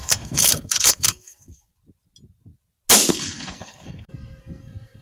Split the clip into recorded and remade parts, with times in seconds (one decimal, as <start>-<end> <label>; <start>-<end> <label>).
0.0-1.7 remade; 1.7-3.1 recorded; 3.1-5.0 remade